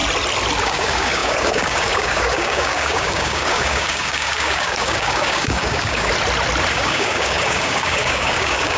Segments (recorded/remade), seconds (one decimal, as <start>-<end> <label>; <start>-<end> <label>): 0.0-0.6 recorded; 0.6-6.1 remade; 6.1-6.7 recorded; 6.7-8.8 remade